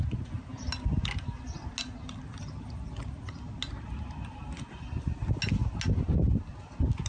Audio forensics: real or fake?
real